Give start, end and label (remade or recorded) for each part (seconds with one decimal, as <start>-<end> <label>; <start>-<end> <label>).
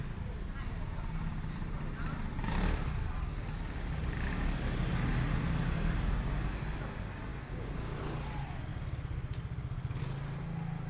0.0-7.3 recorded; 7.3-8.0 remade; 8.0-10.9 recorded